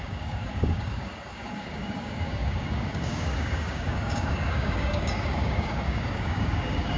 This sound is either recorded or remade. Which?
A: remade